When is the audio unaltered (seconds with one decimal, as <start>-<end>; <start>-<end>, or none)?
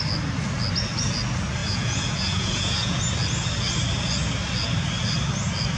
0.0-1.6; 3.0-5.8